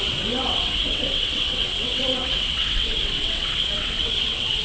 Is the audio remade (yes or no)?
yes